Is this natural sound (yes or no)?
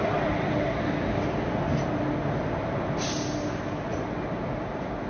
yes